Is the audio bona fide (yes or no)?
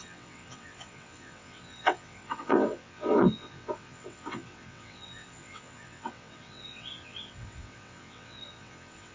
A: no